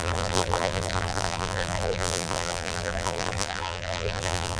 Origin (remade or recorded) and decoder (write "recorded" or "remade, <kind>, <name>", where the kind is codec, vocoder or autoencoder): remade, vocoder, BigVGAN v2